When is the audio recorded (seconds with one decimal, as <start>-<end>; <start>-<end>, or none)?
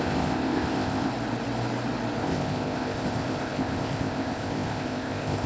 1.1-2.2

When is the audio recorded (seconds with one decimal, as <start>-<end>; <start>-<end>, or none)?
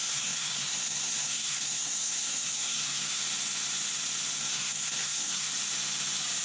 3.2-4.4; 5.5-6.4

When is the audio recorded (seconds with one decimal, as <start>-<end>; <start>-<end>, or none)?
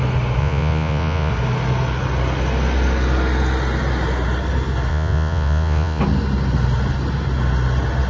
0.0-0.4; 1.3-4.9; 6.0-8.1